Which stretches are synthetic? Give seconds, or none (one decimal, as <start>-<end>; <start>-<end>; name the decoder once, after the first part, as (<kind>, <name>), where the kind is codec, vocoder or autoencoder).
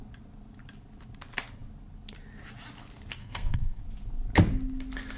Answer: 3.2-3.8 (codec, SNAC)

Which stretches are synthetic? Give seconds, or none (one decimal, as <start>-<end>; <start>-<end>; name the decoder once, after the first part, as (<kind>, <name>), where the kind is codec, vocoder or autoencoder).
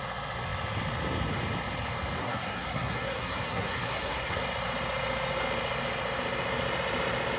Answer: 2.2-4.4 (codec, SNAC)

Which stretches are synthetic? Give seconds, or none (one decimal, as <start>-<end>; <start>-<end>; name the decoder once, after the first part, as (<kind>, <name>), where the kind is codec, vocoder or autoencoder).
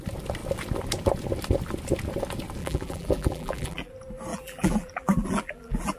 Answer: 2.6-3.9 (vocoder, BigVGAN v2); 4.3-6.0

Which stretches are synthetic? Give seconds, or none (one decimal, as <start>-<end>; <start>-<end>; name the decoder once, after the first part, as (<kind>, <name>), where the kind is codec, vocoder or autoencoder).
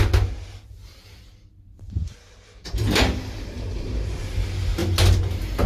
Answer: 0.8-4.2 (vocoder, BigVGAN v2)